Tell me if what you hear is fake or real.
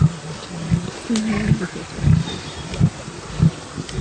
real